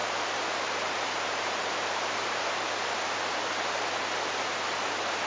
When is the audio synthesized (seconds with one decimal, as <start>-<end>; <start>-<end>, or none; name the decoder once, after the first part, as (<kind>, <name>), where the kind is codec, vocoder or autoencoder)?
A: 0.0-2.4 (vocoder, BigVGAN v2)